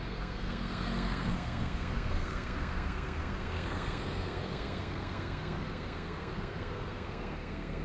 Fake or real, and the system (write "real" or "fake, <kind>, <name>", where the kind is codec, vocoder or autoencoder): fake, codec, SNAC